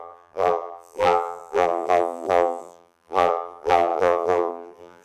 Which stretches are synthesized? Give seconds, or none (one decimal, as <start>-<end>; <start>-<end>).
0.0-5.0